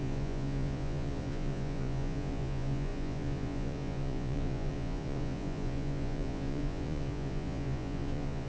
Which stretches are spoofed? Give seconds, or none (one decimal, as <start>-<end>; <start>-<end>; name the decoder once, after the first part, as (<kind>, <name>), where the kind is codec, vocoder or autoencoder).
0.0-8.5 (vocoder, Vocos)